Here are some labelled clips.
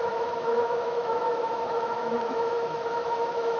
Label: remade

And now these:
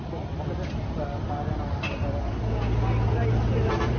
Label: recorded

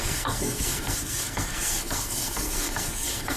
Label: remade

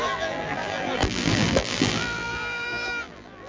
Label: remade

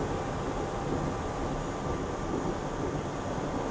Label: recorded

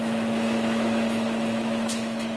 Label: remade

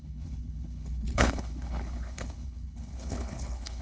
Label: remade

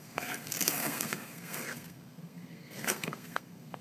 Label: remade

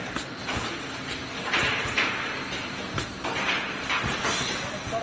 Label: recorded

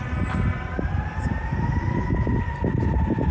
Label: recorded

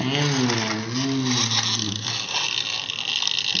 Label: recorded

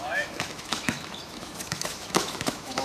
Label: remade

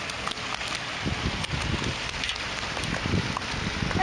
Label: recorded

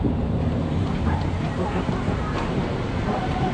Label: remade